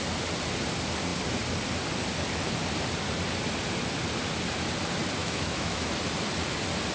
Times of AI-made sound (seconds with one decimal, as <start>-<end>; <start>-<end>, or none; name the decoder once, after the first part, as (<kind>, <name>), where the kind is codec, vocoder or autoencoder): 5.2-5.9 (autoencoder, DAC-VAE)